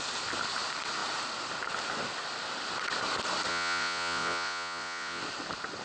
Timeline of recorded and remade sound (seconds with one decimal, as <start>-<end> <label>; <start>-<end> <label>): 0.0-3.5 recorded; 3.5-5.2 remade; 5.2-5.8 recorded